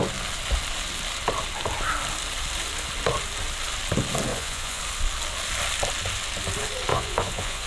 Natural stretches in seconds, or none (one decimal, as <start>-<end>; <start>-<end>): 0.0-4.3; 4.8-6.9